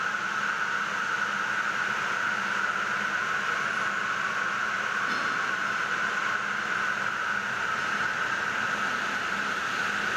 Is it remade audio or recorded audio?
recorded